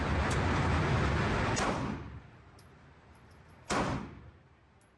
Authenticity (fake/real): real